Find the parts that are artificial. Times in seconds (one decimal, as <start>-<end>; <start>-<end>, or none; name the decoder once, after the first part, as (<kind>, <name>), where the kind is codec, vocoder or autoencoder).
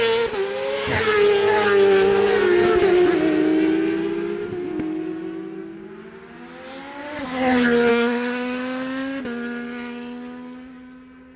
7.9-9.2 (autoencoder, DAC-VAE)